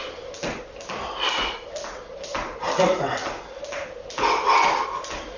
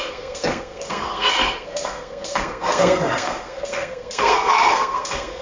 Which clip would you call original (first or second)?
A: first